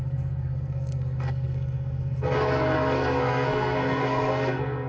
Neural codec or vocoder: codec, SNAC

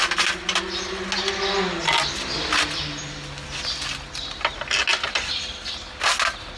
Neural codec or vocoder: none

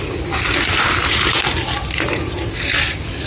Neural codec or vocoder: none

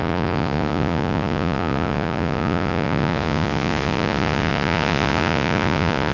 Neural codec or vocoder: vocoder, Vocos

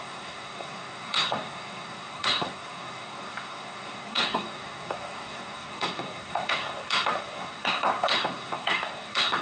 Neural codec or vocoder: codec, SNAC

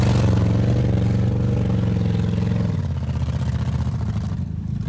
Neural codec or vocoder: none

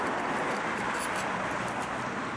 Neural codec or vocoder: none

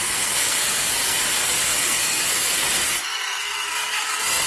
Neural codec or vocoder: codec, SNAC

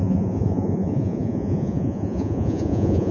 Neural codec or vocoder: vocoder, Vocos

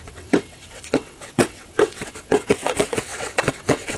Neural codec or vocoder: vocoder, WaveNeXt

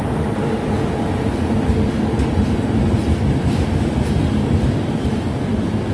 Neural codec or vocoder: none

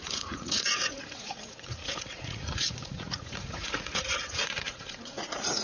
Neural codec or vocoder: vocoder, Vocos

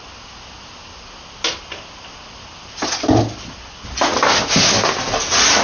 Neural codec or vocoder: none